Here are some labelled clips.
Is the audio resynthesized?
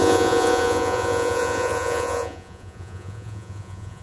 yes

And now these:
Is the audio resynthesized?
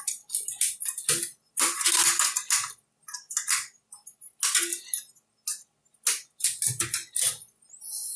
no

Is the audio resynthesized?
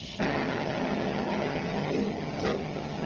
yes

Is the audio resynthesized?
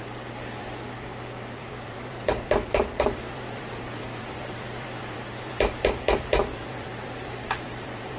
yes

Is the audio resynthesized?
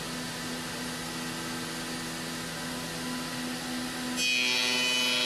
no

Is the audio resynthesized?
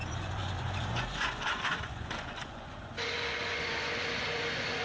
yes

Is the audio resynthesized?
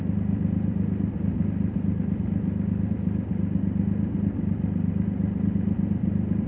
no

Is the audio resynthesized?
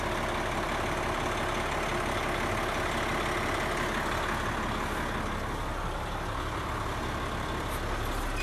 no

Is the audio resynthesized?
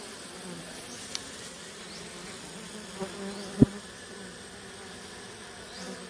no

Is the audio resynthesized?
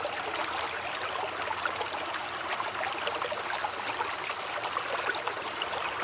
no